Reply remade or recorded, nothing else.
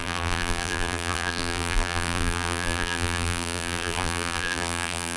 remade